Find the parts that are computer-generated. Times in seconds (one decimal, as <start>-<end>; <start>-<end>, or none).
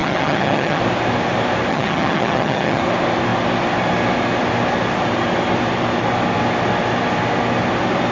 0.0-0.8; 1.7-2.8